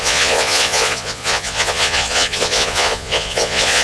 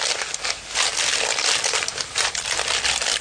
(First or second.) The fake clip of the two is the first